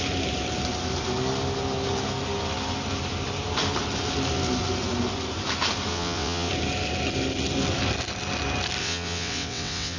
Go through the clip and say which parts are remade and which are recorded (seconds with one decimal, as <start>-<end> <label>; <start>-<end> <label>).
0.0-5.9 recorded; 5.9-6.5 remade; 6.5-8.8 recorded; 8.8-10.0 remade